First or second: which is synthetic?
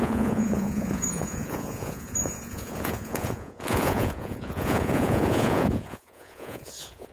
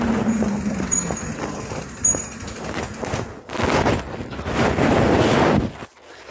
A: first